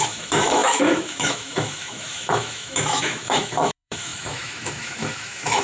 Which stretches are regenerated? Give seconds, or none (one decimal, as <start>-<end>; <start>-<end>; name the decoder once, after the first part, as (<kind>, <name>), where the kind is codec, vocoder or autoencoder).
0.0-5.6 (autoencoder, DAC-VAE)